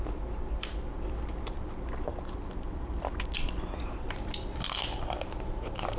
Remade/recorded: recorded